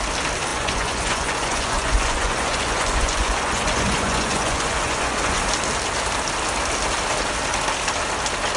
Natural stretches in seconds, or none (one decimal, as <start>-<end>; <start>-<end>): 0.0-0.5; 5.4-8.6